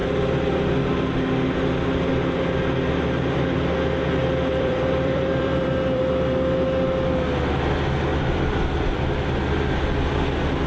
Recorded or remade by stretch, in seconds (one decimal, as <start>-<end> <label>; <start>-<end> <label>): 0.0-4.2 recorded; 4.2-6.0 remade; 6.0-8.1 recorded; 8.1-9.1 remade; 9.1-10.7 recorded